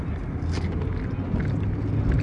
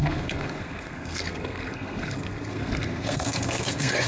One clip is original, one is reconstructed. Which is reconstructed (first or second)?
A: second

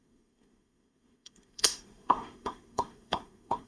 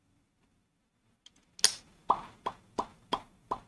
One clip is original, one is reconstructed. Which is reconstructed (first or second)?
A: first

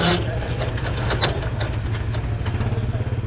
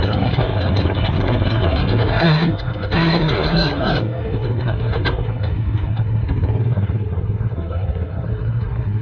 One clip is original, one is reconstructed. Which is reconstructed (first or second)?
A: second